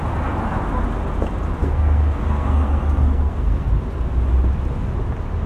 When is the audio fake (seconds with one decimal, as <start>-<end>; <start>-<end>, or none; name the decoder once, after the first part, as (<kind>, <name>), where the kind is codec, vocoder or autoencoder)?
1.6-3.7 (codec, SNAC)